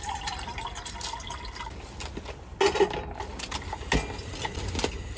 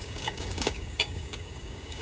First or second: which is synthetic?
second